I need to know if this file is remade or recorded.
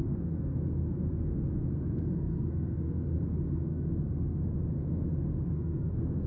remade